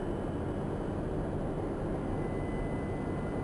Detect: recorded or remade recorded